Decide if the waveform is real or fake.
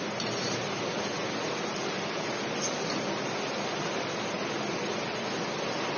real